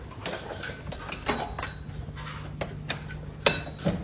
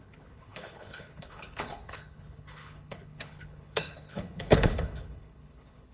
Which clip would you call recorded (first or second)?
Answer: first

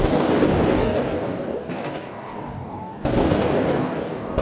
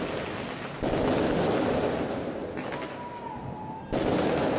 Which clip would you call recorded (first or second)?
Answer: second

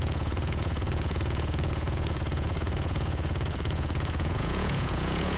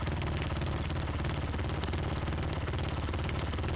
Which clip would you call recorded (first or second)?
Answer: second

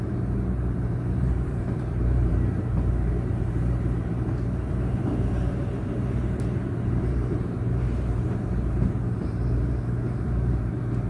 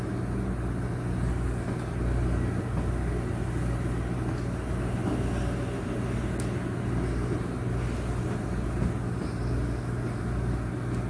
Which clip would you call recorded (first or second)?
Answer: second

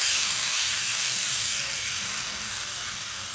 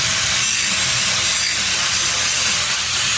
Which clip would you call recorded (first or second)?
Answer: second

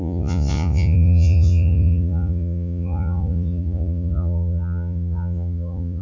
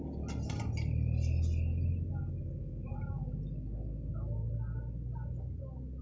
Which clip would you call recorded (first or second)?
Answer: second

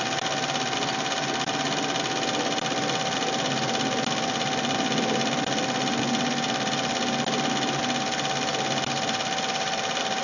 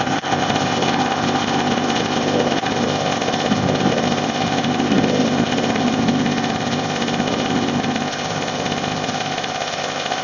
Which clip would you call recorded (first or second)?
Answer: first